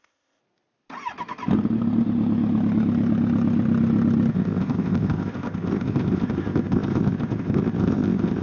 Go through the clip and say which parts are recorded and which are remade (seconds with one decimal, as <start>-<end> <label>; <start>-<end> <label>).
0.0-0.4 remade; 0.4-4.3 recorded; 4.3-8.4 remade